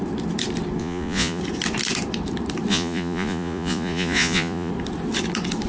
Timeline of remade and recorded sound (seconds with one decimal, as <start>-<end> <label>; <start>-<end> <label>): 0.0-0.8 recorded; 0.8-1.4 remade; 1.4-2.7 recorded; 2.7-4.7 remade; 4.7-5.7 recorded